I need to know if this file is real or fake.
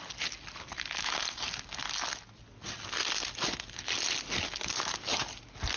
real